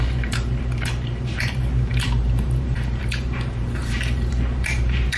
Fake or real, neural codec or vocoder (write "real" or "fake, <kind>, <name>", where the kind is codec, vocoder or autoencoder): fake, vocoder, BigVGAN v2